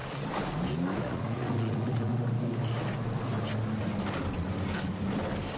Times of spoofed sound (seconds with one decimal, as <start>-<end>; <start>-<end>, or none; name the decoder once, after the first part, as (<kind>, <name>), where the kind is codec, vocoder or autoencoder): 1.0-2.1 (vocoder, Vocos)